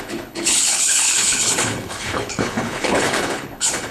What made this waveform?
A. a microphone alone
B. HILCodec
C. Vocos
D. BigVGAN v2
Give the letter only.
B